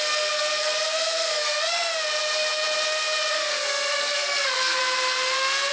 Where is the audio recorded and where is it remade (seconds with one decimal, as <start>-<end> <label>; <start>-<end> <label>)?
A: 0.0-1.9 remade; 1.9-3.3 recorded; 3.3-4.8 remade; 4.8-5.7 recorded